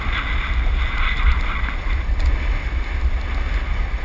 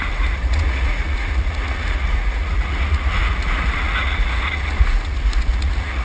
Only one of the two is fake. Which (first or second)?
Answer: second